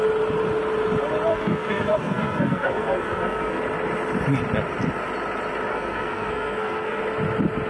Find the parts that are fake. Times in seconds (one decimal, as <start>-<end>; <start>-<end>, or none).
1.3-3.6; 5.7-7.0